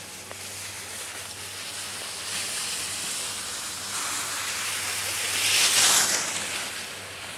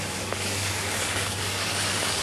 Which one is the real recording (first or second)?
first